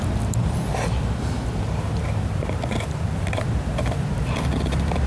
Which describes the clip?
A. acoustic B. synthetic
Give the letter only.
B